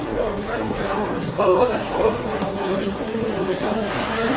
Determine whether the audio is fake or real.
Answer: fake